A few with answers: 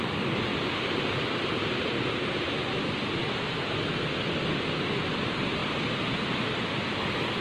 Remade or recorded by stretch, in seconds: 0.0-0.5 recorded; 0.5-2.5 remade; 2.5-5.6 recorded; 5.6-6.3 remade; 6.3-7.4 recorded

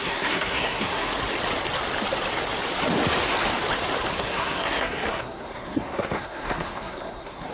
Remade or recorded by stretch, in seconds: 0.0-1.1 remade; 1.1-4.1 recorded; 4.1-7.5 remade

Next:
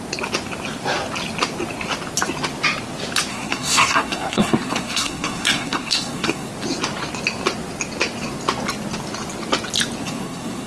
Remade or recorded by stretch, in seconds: 0.0-3.3 recorded; 3.3-6.5 remade; 6.5-10.0 recorded; 10.0-10.7 remade

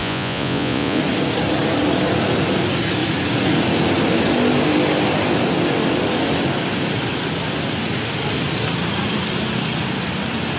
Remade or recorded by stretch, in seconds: 0.0-1.0 remade; 1.0-10.6 recorded

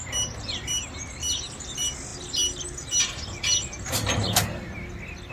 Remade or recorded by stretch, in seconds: 0.0-5.3 recorded

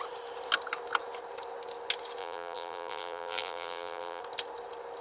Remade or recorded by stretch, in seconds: 0.0-2.2 recorded; 2.2-4.2 remade; 4.2-5.0 recorded